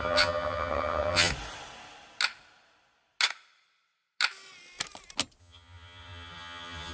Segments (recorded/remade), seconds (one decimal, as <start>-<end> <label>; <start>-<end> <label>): 0.0-1.3 remade; 1.3-5.4 recorded; 5.4-6.9 remade